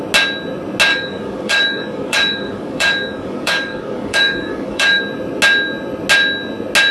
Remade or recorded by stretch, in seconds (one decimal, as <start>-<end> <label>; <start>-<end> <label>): 0.0-0.9 recorded; 0.9-5.0 remade; 5.0-6.9 recorded